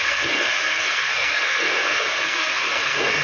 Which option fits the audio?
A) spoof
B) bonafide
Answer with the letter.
A